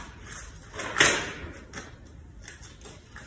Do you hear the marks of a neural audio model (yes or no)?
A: no